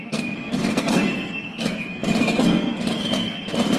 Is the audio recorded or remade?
remade